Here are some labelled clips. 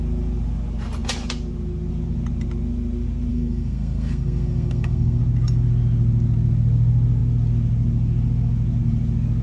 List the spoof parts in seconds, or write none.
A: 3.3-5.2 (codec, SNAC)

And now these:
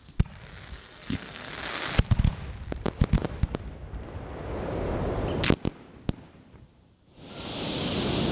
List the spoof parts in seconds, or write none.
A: 0.7-1.5 (codec, SNAC)

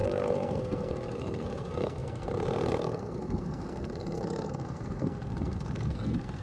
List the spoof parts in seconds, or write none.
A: 0.0-6.4 (codec, SNAC)

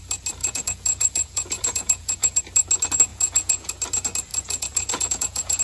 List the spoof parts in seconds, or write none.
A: 0.4-2.4 (vocoder, Vocos); 3.1-3.7; 4.3-5.6

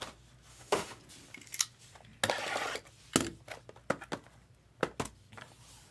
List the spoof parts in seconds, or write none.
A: 0.5-1.0 (autoencoder, DAC-VAE)

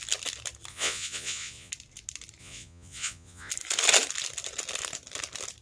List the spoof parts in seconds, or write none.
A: 0.7-1.7 (vocoder, Vocos); 2.4-3.5

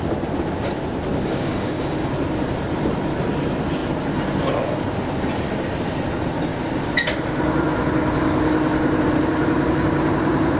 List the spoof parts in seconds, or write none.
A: 1.1-2.1 (codec, DAC)

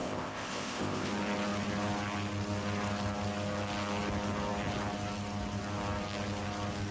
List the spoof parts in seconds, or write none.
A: 0.0-1.1 (codec, ZipCodec)